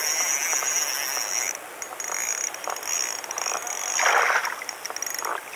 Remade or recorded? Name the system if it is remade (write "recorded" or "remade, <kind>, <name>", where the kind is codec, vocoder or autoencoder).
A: recorded